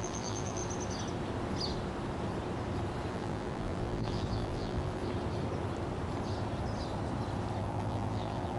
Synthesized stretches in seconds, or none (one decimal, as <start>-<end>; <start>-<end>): 0.0-0.6; 3.1-5.0; 7.6-8.6